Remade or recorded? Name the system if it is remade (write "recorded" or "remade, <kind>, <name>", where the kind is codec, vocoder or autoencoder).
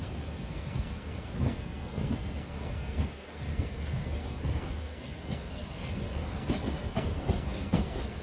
remade, codec, SNAC